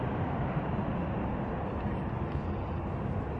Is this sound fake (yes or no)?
no